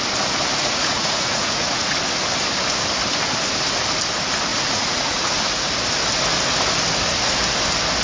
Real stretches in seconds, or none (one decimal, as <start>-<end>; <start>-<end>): 0.0-0.5; 2.0-4.5; 5.3-8.0